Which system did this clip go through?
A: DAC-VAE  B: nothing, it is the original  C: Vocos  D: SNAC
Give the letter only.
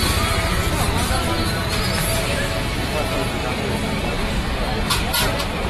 B